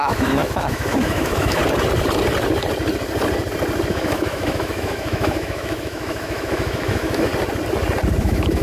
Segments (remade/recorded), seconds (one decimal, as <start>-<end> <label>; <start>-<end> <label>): 0.0-1.6 remade; 1.6-3.9 recorded; 3.9-7.3 remade; 7.3-8.2 recorded; 8.2-8.6 remade